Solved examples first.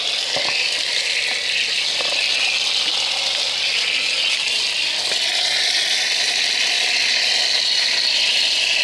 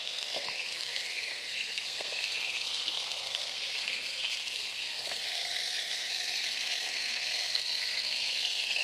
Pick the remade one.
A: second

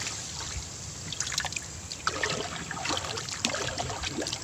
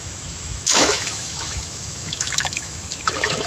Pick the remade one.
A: second